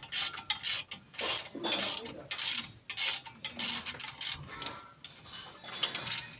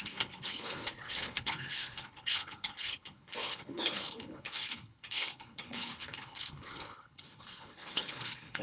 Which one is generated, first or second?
second